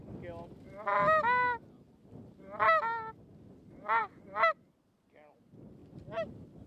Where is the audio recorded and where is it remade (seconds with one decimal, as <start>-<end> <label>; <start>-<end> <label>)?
0.0-6.7 recorded

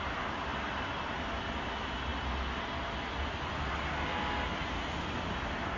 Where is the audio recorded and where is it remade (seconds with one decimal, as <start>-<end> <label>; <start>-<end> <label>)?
0.0-0.5 recorded; 0.5-1.1 remade; 1.1-5.8 recorded

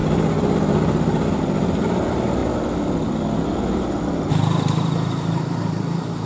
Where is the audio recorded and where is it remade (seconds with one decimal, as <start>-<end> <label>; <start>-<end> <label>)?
0.0-6.3 recorded

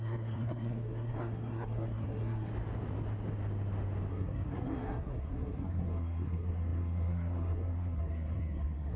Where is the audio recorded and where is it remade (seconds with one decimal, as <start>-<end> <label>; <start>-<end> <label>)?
0.0-2.5 remade; 2.5-4.1 recorded; 4.1-9.0 remade

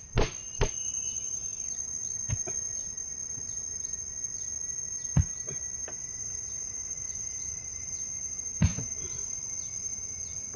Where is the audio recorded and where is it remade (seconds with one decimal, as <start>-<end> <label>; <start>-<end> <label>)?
0.0-6.0 recorded; 6.0-8.0 remade; 8.0-8.7 recorded; 8.7-10.6 remade

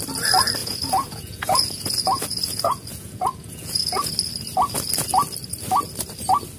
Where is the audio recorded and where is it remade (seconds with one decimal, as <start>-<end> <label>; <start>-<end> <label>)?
0.0-0.6 recorded; 0.6-4.1 remade; 4.1-6.6 recorded

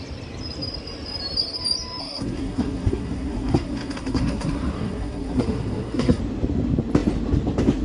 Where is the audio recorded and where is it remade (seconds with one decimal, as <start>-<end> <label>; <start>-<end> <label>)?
0.0-2.0 recorded; 2.0-6.2 remade; 6.2-7.8 recorded

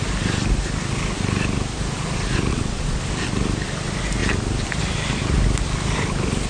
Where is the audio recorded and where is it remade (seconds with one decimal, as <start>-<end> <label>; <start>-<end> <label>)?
0.0-2.5 recorded; 2.5-3.0 remade; 3.0-6.5 recorded